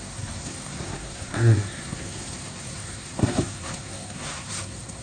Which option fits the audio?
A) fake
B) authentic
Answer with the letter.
A